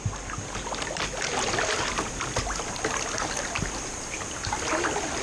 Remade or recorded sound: recorded